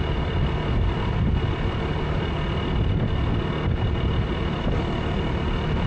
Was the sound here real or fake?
real